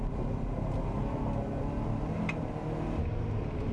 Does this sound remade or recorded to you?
recorded